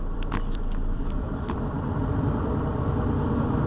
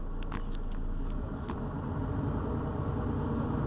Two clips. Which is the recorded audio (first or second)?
second